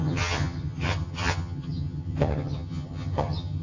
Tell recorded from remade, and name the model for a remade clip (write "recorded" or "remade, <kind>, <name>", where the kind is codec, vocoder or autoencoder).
remade, vocoder, HiFi-GAN